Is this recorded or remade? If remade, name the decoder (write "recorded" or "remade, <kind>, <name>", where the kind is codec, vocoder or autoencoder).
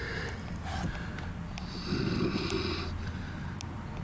recorded